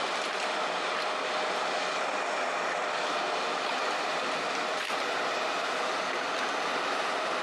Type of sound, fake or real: real